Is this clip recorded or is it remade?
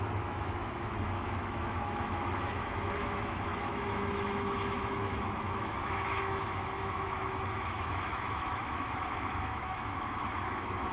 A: remade